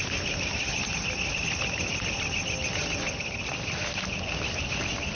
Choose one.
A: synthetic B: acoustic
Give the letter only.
B